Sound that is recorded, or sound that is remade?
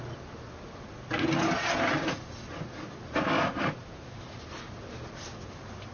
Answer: recorded